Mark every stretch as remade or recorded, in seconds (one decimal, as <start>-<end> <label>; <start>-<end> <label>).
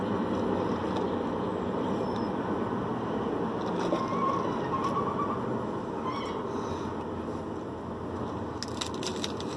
0.0-9.6 recorded